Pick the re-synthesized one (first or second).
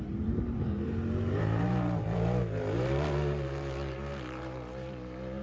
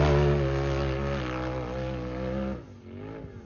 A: first